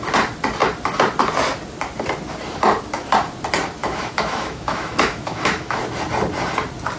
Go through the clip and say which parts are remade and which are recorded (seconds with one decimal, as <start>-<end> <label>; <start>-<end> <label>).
0.0-3.8 recorded; 3.8-5.8 remade; 5.8-7.0 recorded